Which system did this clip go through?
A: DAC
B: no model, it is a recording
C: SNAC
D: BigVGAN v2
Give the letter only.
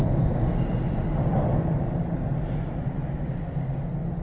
B